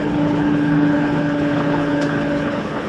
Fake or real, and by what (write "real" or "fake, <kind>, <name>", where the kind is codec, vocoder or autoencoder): fake, codec, HILCodec